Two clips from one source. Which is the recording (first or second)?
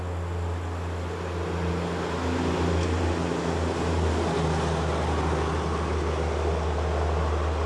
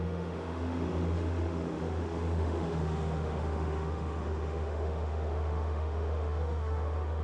first